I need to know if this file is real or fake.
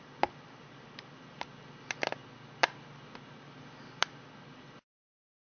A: real